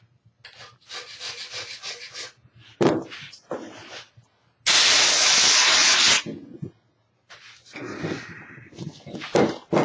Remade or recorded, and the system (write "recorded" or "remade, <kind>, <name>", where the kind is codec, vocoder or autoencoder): recorded